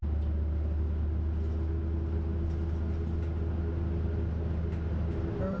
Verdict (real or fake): real